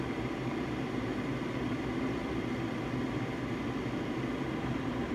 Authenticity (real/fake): fake